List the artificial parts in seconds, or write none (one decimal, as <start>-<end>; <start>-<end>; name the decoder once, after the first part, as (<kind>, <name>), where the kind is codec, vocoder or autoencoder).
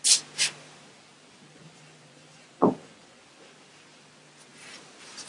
1.5-3.2 (vocoder, Vocos)